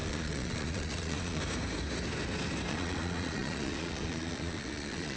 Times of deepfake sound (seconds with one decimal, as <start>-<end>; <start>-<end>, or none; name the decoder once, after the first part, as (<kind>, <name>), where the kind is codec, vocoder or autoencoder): 0.0-1.4 (vocoder, Vocos); 2.7-5.2